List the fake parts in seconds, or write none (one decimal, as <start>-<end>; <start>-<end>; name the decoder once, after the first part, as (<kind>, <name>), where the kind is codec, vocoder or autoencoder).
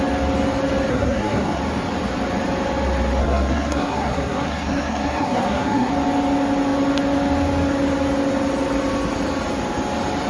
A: 0.9-1.6 (codec, SNAC); 3.2-5.9